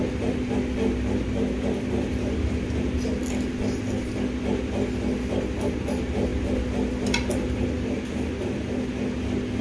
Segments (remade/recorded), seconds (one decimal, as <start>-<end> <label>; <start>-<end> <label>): 0.0-9.6 recorded